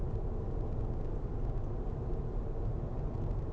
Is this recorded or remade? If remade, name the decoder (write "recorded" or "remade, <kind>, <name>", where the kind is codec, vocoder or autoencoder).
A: remade, vocoder, BigVGAN v2